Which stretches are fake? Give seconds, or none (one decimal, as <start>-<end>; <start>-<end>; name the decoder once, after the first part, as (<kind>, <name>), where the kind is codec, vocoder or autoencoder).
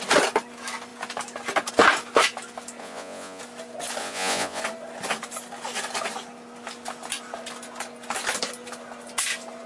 2.8-3.4 (vocoder, Vocos); 4.0-4.6